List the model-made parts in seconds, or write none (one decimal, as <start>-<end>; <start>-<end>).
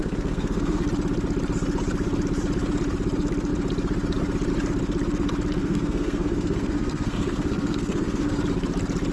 0.0-0.8; 5.6-8.4